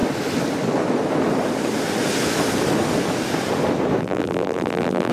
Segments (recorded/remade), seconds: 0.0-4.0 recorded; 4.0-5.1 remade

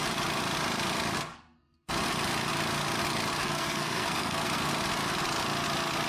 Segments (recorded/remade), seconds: 0.0-1.3 recorded; 1.3-1.9 remade; 1.9-3.4 recorded; 3.4-4.7 remade; 4.7-6.1 recorded

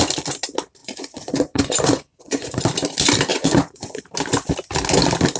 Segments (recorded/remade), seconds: 0.0-0.8 recorded; 0.8-2.6 remade; 2.6-3.3 recorded; 3.3-4.0 remade; 4.0-5.4 recorded

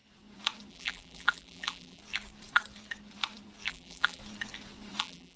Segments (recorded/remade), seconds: 0.0-0.7 recorded; 0.7-2.0 remade; 2.0-3.7 recorded; 3.7-4.2 remade; 4.2-5.0 recorded; 5.0-5.4 remade

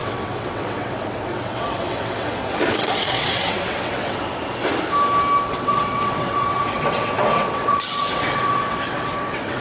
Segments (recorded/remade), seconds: 0.0-4.6 remade; 4.6-5.5 recorded; 5.5-9.6 remade

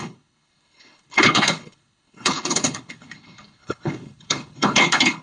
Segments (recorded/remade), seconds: 0.0-5.2 remade

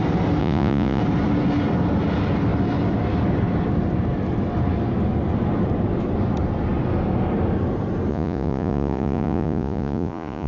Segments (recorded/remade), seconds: 0.0-0.4 recorded; 0.4-1.0 remade; 1.0-8.1 recorded; 8.1-10.5 remade

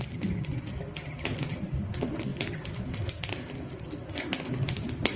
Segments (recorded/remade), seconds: 0.0-5.2 recorded